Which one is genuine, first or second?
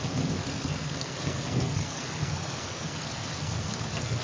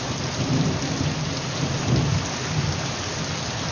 second